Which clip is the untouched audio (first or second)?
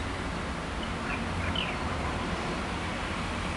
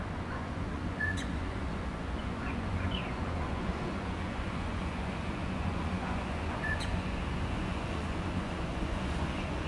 first